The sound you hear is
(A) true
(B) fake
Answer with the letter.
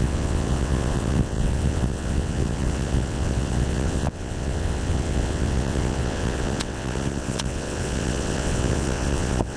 B